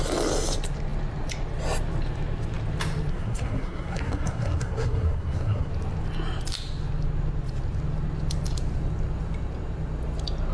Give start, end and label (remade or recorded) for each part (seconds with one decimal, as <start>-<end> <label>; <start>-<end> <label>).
0.0-3.1 recorded; 3.1-5.7 remade; 5.7-10.5 recorded